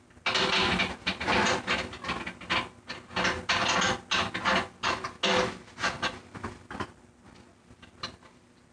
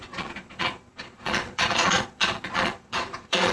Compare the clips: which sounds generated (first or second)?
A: second